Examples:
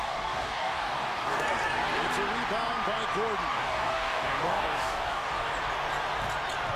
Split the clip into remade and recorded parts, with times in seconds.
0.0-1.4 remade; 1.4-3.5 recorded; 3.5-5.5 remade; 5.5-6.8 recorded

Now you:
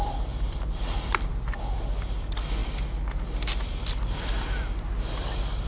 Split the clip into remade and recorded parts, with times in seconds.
0.0-1.3 remade; 1.3-5.7 recorded

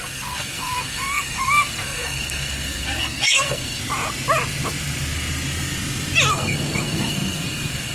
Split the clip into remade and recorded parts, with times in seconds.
0.0-3.8 remade; 3.8-6.3 recorded; 6.3-7.9 remade

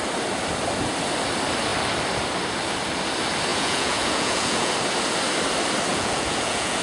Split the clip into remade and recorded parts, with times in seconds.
0.0-3.5 recorded; 3.5-4.7 remade; 4.7-5.9 recorded; 5.9-6.8 remade

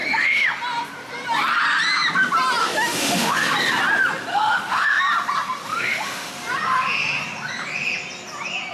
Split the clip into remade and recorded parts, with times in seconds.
0.0-0.6 remade; 0.6-2.6 recorded; 2.6-3.5 remade; 3.5-4.3 recorded; 4.3-5.0 remade; 5.0-5.7 recorded; 5.7-6.3 remade; 6.3-8.7 recorded

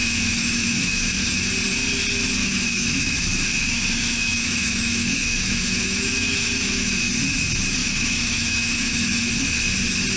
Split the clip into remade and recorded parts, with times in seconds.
0.0-1.5 remade; 1.5-2.4 recorded; 2.4-7.1 remade; 7.1-7.8 recorded; 7.8-9.3 remade; 9.3-10.2 recorded